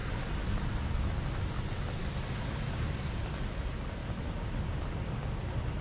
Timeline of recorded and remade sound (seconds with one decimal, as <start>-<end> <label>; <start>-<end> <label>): 0.0-5.8 recorded